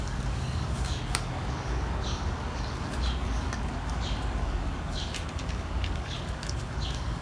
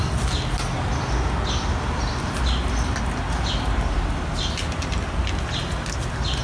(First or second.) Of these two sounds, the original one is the second